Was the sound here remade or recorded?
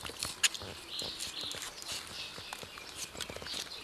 recorded